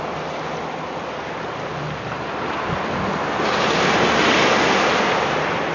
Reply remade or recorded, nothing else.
recorded